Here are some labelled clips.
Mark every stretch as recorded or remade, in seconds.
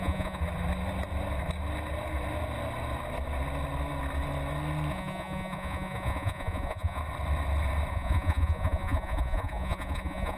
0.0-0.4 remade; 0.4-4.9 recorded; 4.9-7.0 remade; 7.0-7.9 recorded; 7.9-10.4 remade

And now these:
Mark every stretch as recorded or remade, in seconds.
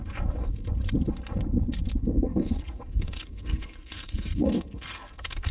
0.0-2.0 recorded; 2.0-5.5 remade